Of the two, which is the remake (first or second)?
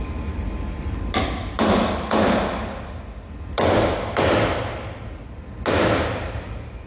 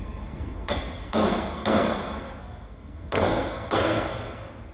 second